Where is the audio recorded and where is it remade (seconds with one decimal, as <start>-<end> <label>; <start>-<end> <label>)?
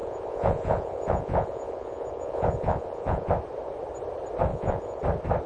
0.0-3.3 remade; 3.3-4.5 recorded; 4.5-5.0 remade; 5.0-5.5 recorded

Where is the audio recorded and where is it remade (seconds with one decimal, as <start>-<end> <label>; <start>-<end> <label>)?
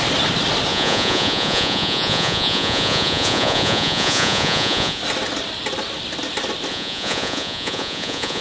0.0-0.7 recorded; 0.7-5.0 remade; 5.0-6.7 recorded; 6.7-8.4 remade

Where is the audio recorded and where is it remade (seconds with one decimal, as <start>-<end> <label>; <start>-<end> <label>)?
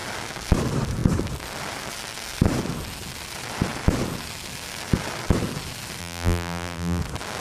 0.0-6.0 recorded; 6.0-7.0 remade; 7.0-7.4 recorded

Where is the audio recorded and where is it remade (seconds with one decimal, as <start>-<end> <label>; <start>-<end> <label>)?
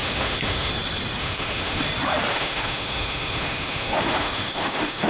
0.0-0.7 remade; 0.7-1.2 recorded; 1.2-1.8 remade; 1.8-2.3 recorded; 2.3-5.1 remade